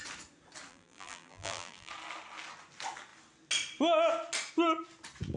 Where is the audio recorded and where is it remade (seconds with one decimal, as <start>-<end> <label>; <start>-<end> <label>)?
0.0-0.7 recorded; 0.7-1.9 remade; 1.9-5.4 recorded

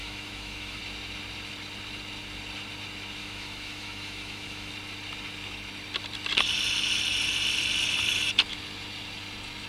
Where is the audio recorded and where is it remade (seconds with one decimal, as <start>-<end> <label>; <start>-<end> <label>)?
0.0-0.8 remade; 0.8-3.2 recorded; 3.2-4.7 remade; 4.7-9.7 recorded

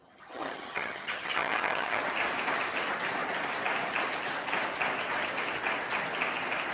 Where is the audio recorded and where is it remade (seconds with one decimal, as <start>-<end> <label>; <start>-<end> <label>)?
0.0-2.0 remade; 2.0-6.7 recorded

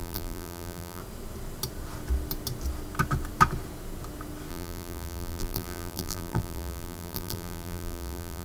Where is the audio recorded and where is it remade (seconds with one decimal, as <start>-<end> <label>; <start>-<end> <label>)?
0.0-1.0 remade; 1.0-4.5 recorded; 4.5-8.4 remade

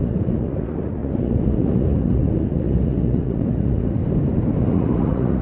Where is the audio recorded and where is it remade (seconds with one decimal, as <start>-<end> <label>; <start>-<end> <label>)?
0.0-4.0 remade; 4.0-4.6 recorded; 4.6-5.4 remade